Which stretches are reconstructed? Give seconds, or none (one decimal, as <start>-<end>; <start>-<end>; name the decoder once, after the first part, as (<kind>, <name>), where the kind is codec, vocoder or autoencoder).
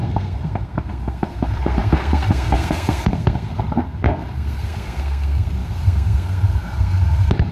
0.0-7.5 (codec, SNAC)